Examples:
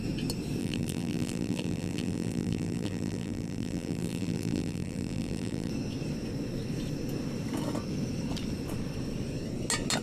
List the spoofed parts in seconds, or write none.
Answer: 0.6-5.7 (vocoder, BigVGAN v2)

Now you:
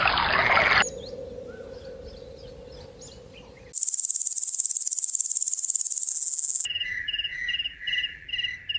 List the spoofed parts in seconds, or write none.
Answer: 6.1-8.3 (vocoder, BigVGAN v2)

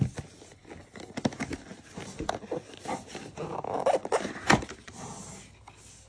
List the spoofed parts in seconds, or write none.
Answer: 1.7-5.0 (vocoder, BigVGAN v2)